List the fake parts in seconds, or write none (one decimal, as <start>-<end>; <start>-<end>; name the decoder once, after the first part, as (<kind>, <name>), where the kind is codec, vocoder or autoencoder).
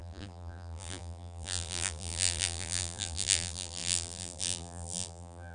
0.0-5.5 (vocoder, BigVGAN v2)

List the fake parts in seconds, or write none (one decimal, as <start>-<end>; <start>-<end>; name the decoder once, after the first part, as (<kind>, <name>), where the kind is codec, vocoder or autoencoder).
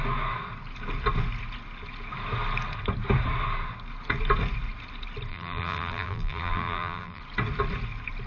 5.3-7.2 (vocoder, BigVGAN v2)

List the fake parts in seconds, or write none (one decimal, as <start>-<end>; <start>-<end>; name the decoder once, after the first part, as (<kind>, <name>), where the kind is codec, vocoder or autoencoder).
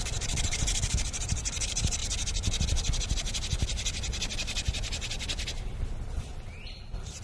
0.0-2.0 (vocoder, BigVGAN v2); 5.9-7.2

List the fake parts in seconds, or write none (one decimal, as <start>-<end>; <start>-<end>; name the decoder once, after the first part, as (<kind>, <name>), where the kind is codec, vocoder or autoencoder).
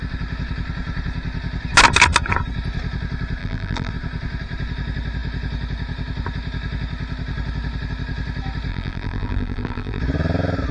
3.4-3.9 (vocoder, BigVGAN v2); 8.7-10.0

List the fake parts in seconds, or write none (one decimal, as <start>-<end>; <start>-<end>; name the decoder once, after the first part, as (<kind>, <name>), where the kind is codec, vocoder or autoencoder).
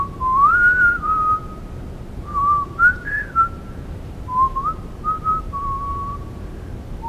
0.0-7.1 (vocoder, BigVGAN v2)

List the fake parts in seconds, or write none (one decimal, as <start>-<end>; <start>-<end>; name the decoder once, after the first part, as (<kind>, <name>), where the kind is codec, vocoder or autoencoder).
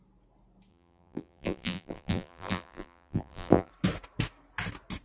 0.7-3.7 (vocoder, BigVGAN v2)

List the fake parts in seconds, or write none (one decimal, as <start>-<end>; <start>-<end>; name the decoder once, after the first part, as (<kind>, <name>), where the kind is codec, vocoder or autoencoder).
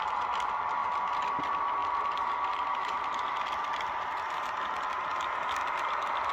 1.8-4.1 (vocoder, BigVGAN v2)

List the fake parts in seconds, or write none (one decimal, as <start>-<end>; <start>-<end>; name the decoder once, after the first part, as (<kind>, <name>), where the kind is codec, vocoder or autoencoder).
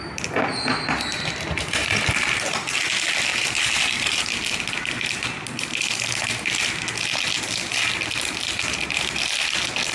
1.1-2.1 (vocoder, BigVGAN v2); 3.3-4.2